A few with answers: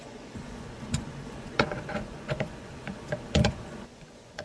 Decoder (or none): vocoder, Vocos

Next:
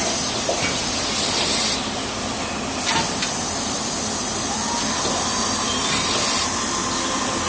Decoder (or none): none